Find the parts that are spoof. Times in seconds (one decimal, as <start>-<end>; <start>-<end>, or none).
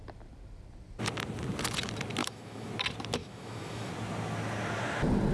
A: 2.2-2.7; 3.2-3.9